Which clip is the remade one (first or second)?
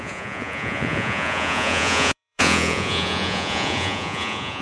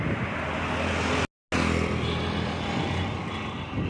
first